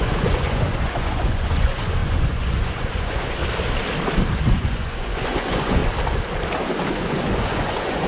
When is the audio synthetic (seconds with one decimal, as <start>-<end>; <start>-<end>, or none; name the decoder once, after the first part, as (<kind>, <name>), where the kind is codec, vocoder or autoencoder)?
0.0-3.4 (vocoder, Vocos); 4.5-5.8; 6.9-8.1